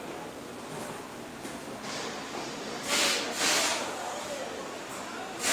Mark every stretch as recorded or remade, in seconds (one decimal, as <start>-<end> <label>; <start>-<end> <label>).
0.0-5.5 recorded